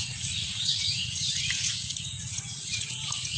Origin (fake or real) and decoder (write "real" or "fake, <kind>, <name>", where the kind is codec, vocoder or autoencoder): fake, vocoder, Vocos